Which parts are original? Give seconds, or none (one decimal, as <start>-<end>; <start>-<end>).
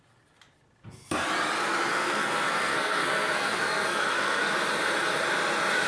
0.0-1.9; 4.5-5.9